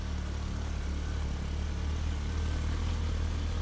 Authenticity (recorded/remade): recorded